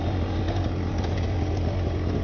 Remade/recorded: recorded